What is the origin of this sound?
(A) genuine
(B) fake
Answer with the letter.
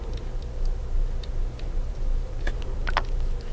A